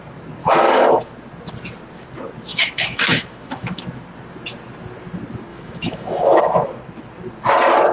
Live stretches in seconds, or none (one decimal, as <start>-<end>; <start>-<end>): 0.0-0.4; 1.0-2.5; 3.8-5.5; 6.4-7.9